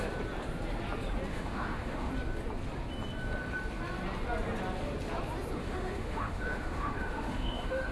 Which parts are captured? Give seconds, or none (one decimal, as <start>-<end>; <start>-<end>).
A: 0.0-1.3; 2.1-5.6